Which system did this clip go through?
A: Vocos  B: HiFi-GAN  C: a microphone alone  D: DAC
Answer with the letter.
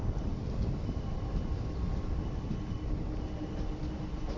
C